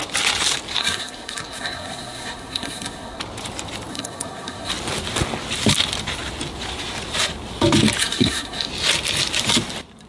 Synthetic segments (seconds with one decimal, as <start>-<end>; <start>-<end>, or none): 0.8-3.2; 3.9-4.7; 8.0-8.7